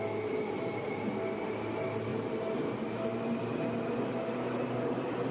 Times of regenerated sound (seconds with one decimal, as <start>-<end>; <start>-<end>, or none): none